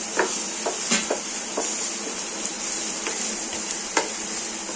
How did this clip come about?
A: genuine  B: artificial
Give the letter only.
A